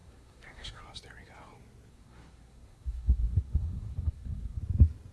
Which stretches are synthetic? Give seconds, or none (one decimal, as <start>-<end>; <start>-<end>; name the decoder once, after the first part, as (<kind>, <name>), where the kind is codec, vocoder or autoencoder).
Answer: 0.0-0.8 (codec, SNAC); 1.9-4.6